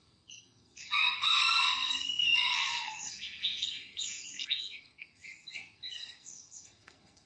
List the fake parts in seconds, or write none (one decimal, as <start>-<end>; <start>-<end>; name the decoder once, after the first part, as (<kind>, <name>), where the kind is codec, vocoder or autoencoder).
0.0-7.3 (codec, SNAC)